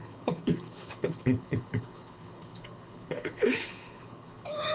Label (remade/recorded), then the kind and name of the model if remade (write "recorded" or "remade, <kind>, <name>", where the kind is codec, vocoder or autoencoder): remade, codec, HILCodec